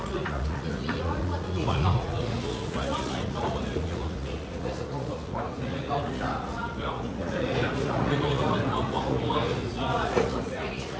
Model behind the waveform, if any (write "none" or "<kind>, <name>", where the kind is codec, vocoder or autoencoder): vocoder, Vocos